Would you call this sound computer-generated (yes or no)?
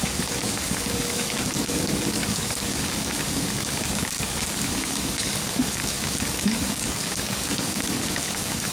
yes